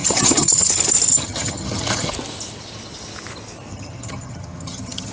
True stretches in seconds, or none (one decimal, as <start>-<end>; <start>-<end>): 0.7-1.1; 2.1-3.7